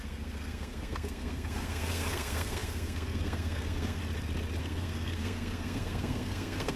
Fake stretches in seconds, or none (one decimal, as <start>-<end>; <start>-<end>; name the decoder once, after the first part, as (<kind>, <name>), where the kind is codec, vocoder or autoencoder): 0.0-4.0 (codec, SNAC); 4.6-6.8